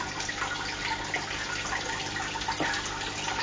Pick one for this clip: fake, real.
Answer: real